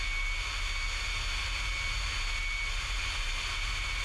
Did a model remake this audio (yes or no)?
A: no